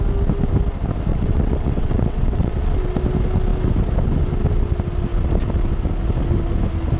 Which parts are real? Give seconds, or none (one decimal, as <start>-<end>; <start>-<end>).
0.0-1.1; 2.6-7.0